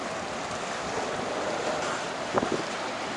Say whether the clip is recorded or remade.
remade